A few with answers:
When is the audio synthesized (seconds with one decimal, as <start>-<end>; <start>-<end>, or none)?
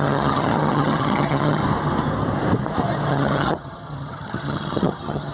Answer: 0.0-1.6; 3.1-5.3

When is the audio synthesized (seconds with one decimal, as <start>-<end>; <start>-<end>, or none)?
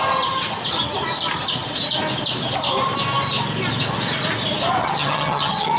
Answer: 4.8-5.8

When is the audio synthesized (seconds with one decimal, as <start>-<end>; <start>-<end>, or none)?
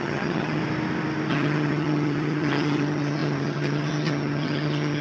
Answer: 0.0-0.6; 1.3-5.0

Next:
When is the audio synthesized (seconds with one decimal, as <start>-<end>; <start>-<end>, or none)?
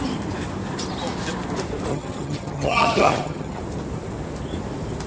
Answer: 1.9-3.6